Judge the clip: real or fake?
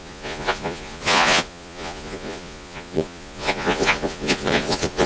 fake